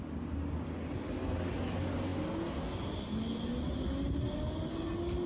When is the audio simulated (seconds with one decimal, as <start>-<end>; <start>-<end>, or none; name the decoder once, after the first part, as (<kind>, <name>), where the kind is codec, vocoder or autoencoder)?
none